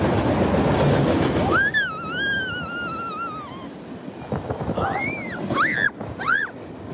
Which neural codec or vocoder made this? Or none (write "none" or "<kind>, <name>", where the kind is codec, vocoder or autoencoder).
none